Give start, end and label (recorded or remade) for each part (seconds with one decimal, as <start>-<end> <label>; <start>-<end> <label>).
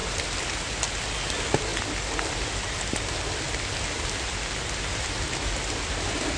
0.0-6.4 recorded